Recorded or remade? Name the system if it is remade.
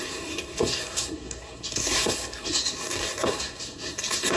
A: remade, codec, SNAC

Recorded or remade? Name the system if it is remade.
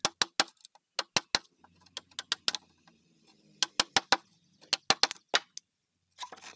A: recorded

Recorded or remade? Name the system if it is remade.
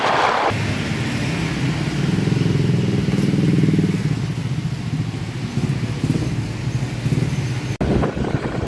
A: recorded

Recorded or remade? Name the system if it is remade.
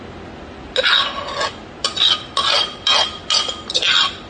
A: recorded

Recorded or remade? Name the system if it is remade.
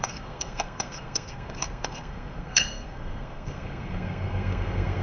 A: remade, codec, SNAC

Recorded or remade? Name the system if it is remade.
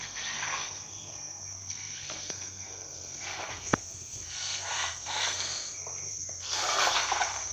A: remade, codec, SNAC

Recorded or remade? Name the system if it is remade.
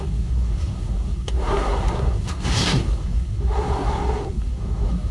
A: remade, codec, SNAC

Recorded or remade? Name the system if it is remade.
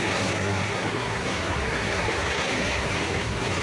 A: remade, codec, SNAC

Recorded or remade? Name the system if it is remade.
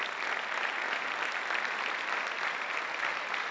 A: recorded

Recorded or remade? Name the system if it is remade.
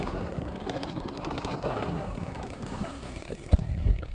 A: remade, codec, SNAC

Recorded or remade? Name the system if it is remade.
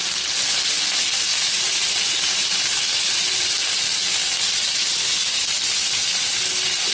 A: recorded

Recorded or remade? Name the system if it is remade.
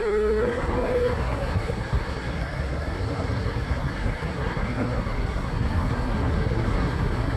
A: remade, codec, SNAC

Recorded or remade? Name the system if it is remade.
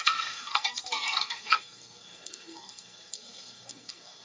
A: remade, codec, SNAC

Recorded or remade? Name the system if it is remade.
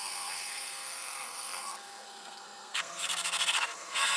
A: remade, codec, SNAC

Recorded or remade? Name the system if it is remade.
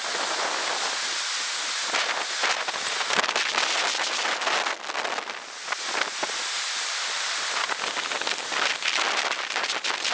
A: recorded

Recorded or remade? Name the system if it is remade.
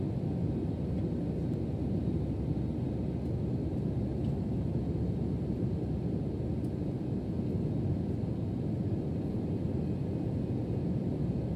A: recorded